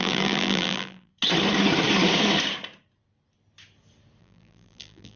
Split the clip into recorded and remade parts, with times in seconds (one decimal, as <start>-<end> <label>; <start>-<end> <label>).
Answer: 0.0-1.1 remade; 1.1-4.2 recorded; 4.2-5.2 remade